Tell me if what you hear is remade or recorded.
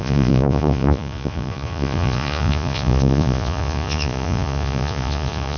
remade